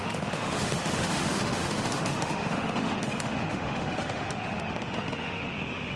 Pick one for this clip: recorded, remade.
remade